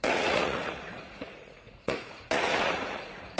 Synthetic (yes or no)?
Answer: yes